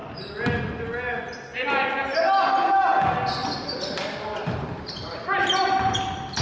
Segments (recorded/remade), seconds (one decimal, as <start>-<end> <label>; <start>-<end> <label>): 0.0-6.4 recorded